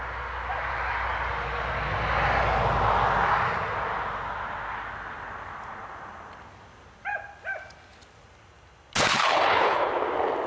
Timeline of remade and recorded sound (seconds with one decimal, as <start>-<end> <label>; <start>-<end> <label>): 0.0-9.1 recorded; 9.1-9.9 remade; 9.9-10.5 recorded